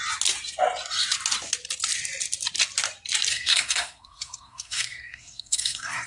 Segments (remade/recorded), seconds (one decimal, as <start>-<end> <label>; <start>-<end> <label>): 0.0-3.3 recorded; 3.3-6.1 remade